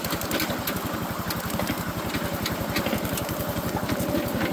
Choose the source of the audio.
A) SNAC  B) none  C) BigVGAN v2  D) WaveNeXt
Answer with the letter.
B